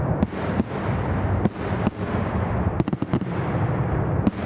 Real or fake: real